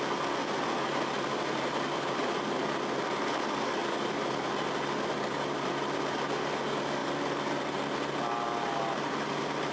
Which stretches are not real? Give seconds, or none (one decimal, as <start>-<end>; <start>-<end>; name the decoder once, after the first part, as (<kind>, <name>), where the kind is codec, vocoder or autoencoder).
none